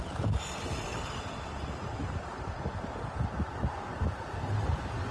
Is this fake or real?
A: real